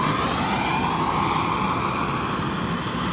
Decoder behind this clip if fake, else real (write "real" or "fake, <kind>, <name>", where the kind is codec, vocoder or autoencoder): real